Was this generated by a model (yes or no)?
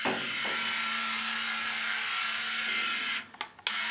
no